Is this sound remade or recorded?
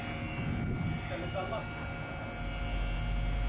recorded